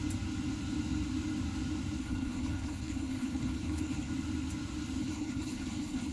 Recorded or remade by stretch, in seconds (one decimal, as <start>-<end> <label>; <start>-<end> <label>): 0.0-2.0 recorded; 2.0-4.1 remade; 4.1-5.0 recorded; 5.0-6.1 remade